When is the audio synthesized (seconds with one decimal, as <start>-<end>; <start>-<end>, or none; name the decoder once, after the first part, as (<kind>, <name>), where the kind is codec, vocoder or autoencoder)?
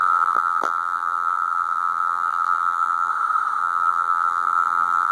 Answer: 0.0-3.1 (vocoder, BigVGAN v2); 3.6-5.1